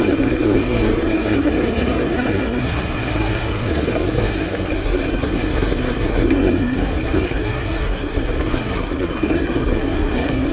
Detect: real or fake fake